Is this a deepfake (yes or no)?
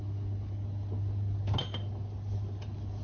no